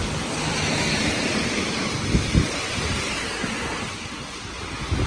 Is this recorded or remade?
recorded